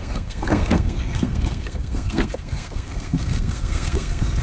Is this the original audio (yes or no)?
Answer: no